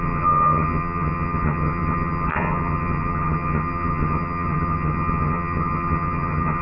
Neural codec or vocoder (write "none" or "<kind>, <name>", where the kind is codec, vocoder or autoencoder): vocoder, HiFi-GAN